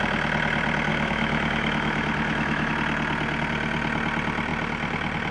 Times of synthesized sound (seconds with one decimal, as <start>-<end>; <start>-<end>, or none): 0.9-2.7